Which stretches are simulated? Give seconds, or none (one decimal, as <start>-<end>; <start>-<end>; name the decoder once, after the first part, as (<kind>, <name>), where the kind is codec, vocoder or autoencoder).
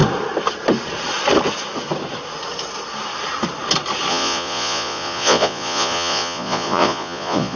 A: 4.1-7.6 (vocoder, Vocos)